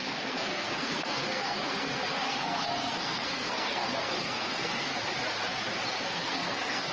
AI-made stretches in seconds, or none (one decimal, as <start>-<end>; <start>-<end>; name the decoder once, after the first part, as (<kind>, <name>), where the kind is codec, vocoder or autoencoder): 0.0-4.9 (codec, SNAC); 6.0-6.9